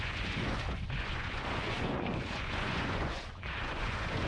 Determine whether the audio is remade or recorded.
remade